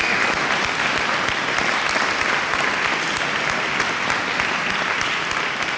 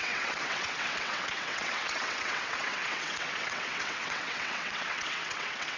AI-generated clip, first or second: second